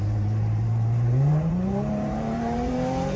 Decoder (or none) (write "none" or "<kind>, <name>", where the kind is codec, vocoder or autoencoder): vocoder, BigVGAN v2